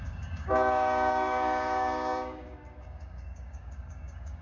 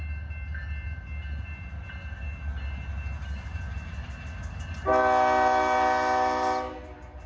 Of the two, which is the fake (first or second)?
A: first